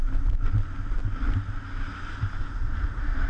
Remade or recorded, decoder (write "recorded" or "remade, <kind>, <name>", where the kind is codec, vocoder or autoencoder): recorded